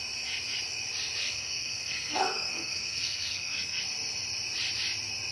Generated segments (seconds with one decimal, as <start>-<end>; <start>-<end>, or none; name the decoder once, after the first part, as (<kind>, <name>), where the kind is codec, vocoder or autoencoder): 1.2-3.8 (codec, SNAC)